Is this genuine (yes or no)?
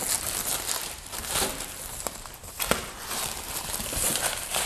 no